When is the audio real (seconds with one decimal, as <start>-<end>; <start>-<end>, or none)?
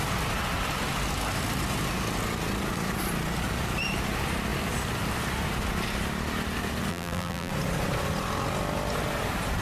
0.0-6.9; 7.5-9.6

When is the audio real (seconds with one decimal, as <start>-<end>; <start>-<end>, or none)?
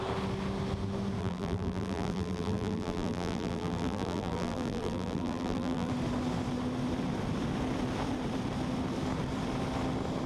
0.0-1.2; 5.9-10.3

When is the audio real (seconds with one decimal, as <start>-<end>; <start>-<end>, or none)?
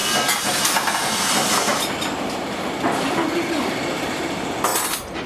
0.0-0.6; 4.7-5.3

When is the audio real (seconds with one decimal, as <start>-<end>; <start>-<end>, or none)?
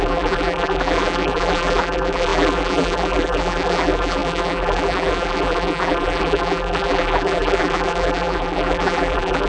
none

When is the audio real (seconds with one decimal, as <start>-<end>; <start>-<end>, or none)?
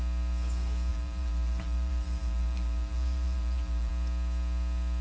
0.0-0.9; 3.9-5.0